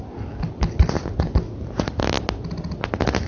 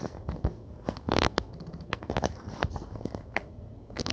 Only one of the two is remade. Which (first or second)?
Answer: second